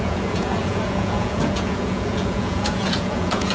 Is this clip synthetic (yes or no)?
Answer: yes